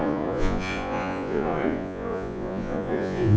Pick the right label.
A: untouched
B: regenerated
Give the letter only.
B